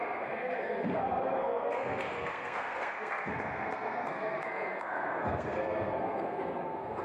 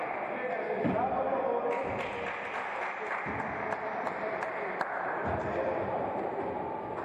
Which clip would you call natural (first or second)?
second